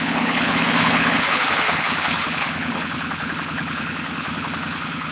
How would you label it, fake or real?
fake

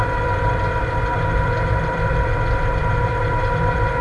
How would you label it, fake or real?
fake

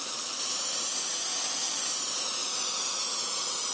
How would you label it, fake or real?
real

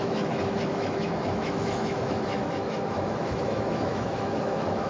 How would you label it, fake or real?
fake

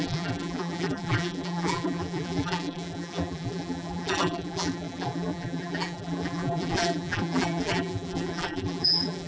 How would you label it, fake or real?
fake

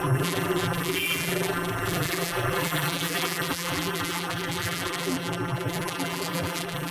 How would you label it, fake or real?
fake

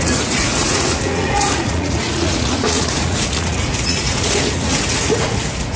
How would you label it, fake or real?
fake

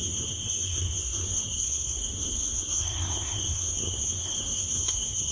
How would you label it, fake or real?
fake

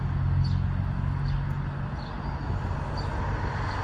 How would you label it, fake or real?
real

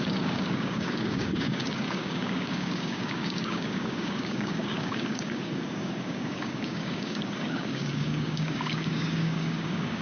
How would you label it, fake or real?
fake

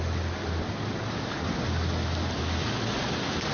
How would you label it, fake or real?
real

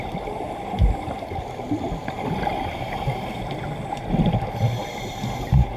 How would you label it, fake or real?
real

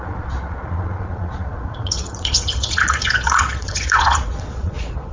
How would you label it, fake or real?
fake